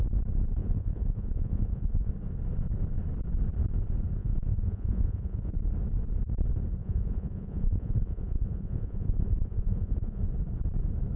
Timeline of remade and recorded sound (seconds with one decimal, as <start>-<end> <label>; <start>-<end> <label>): 0.0-0.6 recorded; 0.6-2.1 remade; 2.1-4.2 recorded; 4.2-5.6 remade; 5.6-6.8 recorded; 6.8-10.2 remade; 10.2-11.2 recorded